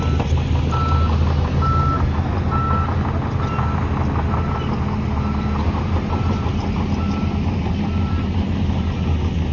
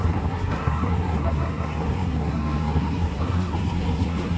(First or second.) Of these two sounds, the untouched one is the first